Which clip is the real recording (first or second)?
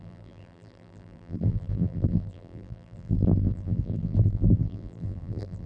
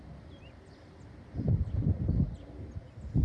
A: second